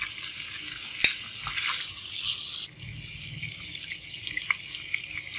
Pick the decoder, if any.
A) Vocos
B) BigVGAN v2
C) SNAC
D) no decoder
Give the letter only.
D